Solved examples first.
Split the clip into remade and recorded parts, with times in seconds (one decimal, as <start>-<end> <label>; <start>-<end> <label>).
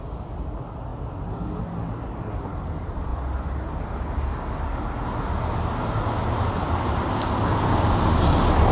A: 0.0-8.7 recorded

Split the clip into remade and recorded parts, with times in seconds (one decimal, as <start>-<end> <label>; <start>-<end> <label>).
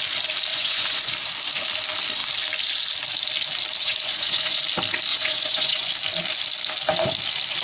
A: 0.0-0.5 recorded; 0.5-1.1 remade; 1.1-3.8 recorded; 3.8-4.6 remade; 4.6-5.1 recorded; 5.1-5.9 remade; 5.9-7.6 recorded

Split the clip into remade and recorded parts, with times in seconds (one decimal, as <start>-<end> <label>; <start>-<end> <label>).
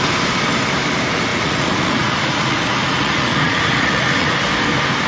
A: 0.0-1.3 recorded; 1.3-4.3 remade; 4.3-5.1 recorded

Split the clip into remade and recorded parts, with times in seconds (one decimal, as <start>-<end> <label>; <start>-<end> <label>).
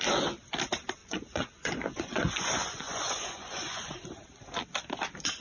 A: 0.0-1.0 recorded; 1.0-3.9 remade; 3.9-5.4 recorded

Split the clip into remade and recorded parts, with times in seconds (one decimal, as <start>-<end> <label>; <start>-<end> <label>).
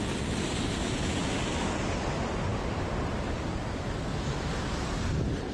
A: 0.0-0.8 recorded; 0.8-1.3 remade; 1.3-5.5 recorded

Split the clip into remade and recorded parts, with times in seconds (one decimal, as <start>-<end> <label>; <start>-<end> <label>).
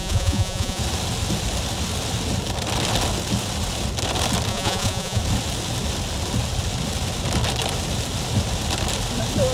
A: 0.0-0.8 remade; 0.8-4.5 recorded; 4.5-5.2 remade; 5.2-9.5 recorded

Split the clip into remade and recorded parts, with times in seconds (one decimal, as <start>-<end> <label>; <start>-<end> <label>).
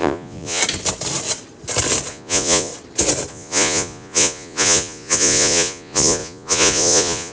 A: 0.0-0.6 remade; 0.6-2.1 recorded; 2.1-2.7 remade; 2.7-3.3 recorded; 3.3-7.3 remade